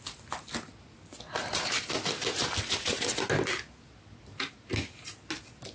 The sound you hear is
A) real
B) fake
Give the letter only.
A